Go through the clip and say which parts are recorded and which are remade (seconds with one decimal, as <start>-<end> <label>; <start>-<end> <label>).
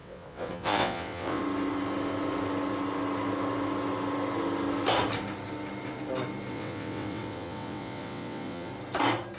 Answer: 0.0-1.4 remade; 1.4-6.5 recorded; 6.5-8.7 remade; 8.7-9.4 recorded